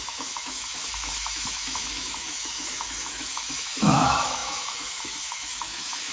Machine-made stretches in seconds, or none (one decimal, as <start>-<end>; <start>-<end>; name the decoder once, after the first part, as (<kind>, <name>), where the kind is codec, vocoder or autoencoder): 0.0-6.1 (autoencoder, DAC-VAE)